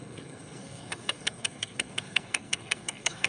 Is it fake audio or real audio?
fake